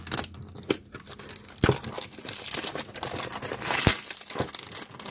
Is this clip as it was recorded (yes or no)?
yes